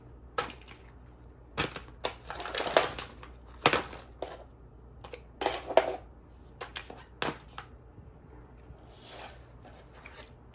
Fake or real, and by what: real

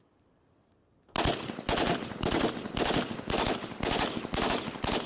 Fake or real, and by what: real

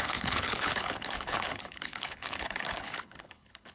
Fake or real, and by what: fake, codec, HILCodec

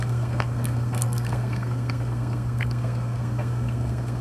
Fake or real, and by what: fake, codec, SNAC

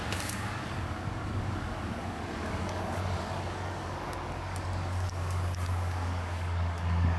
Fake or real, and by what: fake, codec, DAC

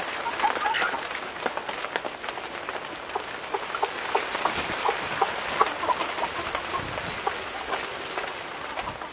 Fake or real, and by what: real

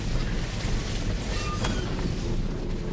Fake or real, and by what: real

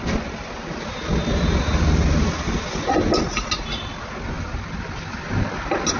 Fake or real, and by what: real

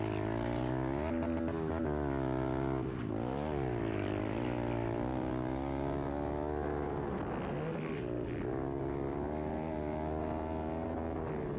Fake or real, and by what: real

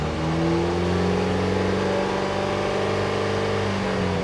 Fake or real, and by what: real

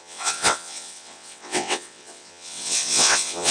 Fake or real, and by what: fake, vocoder, WaveNeXt